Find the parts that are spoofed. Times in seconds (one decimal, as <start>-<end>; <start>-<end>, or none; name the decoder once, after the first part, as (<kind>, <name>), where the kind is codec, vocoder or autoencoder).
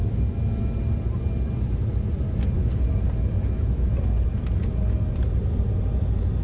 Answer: none